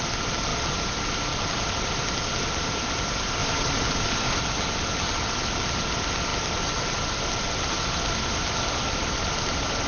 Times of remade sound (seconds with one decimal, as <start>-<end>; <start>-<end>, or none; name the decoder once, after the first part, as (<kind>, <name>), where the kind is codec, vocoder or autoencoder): 3.4-4.4 (vocoder, BigVGAN v2)